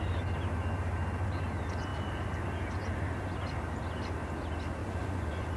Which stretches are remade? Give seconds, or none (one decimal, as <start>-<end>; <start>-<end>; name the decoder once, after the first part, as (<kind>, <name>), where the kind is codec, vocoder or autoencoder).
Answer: 4.8-5.6 (vocoder, Vocos)